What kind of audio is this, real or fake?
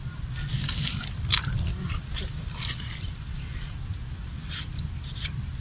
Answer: fake